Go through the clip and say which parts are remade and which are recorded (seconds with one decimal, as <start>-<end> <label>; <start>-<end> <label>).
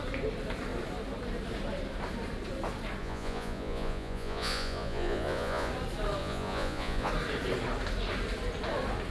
0.0-3.0 recorded; 3.0-5.7 remade; 5.7-6.2 recorded; 6.2-7.1 remade; 7.1-9.1 recorded